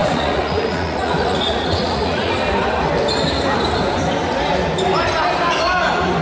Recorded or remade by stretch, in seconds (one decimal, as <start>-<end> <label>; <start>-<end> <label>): 0.0-2.3 remade; 2.3-6.2 recorded